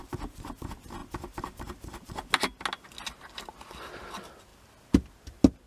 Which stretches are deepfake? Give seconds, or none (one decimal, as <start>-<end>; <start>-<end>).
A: none